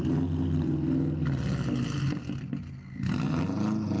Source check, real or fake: real